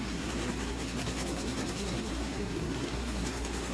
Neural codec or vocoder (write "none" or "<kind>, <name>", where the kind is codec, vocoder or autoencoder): codec, SNAC